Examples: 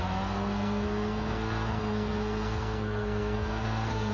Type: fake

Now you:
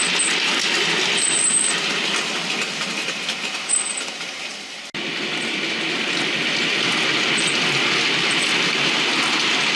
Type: real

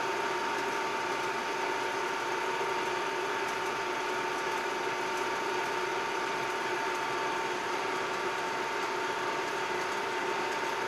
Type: real